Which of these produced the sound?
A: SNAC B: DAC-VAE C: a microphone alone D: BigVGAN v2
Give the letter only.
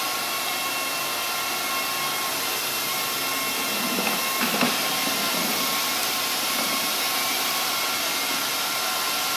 C